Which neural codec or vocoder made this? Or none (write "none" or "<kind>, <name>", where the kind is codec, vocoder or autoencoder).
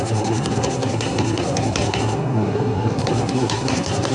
codec, SNAC